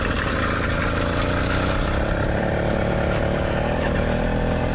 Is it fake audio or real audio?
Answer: real